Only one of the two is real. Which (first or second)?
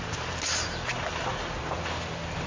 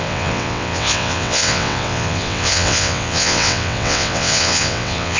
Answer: first